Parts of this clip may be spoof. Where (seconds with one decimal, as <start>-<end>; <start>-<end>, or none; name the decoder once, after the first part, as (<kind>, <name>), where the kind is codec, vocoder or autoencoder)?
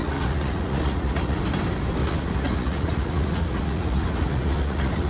0.0-1.4 (vocoder, Vocos); 2.0-5.1